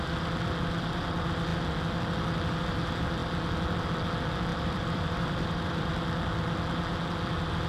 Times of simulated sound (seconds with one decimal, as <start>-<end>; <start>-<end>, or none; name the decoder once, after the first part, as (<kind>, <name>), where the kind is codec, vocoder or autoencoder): 4.5-5.9 (vocoder, BigVGAN v2)